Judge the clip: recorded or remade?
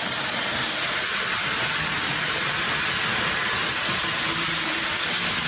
recorded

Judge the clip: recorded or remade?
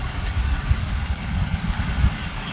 remade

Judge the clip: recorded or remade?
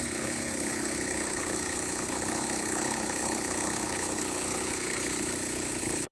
remade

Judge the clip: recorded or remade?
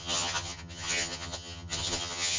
remade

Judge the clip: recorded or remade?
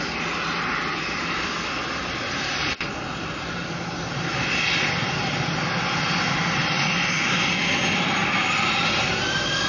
recorded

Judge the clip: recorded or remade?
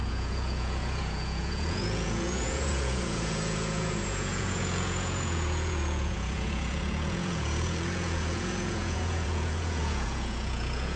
remade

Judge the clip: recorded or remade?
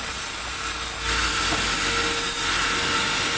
recorded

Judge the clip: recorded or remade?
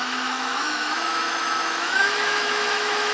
remade